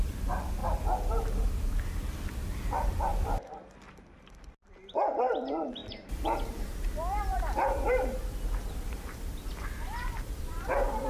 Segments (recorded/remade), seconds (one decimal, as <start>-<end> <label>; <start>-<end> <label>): 0.0-3.1 remade; 3.1-4.2 recorded; 4.2-11.1 remade